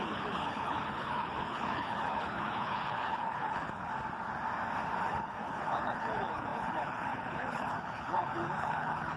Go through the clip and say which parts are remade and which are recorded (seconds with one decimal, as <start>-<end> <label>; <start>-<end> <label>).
0.0-3.9 remade; 3.9-5.0 recorded; 5.0-9.2 remade